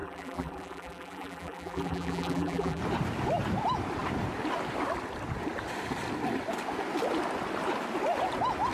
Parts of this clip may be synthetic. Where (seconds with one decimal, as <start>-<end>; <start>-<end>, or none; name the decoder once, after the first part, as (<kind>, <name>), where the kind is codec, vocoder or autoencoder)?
0.0-2.8 (vocoder, BigVGAN v2)